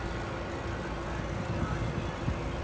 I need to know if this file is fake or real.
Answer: real